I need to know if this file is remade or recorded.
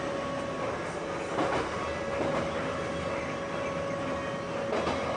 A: recorded